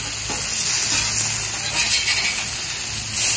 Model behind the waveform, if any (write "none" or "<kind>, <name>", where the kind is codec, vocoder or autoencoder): none